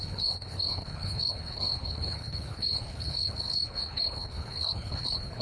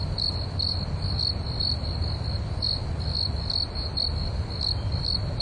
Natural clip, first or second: second